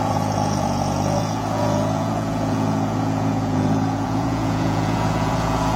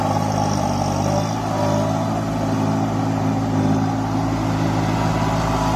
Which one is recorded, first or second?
second